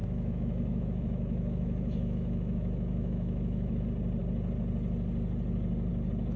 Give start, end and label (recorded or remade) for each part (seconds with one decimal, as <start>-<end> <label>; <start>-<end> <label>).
0.0-3.8 remade; 3.8-6.4 recorded